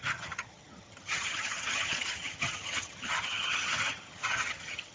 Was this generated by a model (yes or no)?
yes